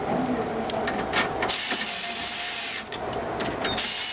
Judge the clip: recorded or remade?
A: recorded